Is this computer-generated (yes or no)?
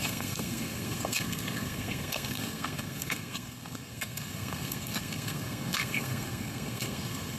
yes